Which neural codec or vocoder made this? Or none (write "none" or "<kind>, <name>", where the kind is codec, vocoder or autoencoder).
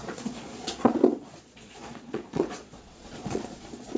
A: vocoder, Vocos